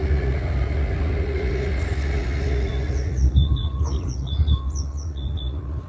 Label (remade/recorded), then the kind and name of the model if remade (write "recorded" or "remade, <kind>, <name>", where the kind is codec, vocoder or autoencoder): remade, vocoder, Vocos